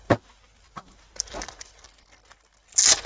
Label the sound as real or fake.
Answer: real